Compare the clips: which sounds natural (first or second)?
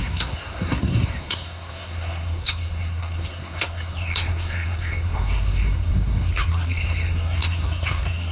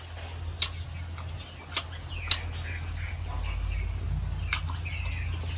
second